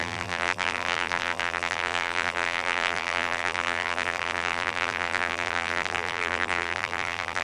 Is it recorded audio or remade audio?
remade